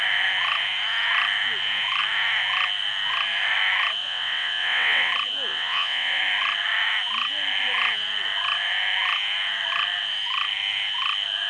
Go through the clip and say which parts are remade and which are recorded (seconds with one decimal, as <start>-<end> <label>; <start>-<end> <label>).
0.0-4.0 recorded; 4.0-5.1 remade; 5.1-5.5 recorded; 5.5-6.2 remade; 6.2-11.5 recorded